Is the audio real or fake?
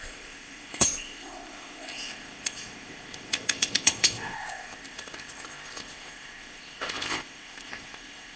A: fake